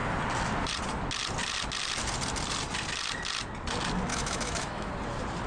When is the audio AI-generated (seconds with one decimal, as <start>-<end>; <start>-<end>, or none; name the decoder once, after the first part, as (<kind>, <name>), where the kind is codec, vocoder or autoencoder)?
4.1-4.9 (autoencoder, DAC-VAE)